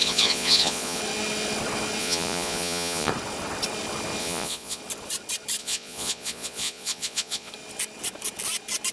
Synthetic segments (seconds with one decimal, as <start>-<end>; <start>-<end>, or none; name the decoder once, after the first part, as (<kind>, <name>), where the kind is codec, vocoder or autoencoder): 0.0-1.0 (vocoder, Vocos); 2.0-3.1; 4.2-4.8; 5.6-7.5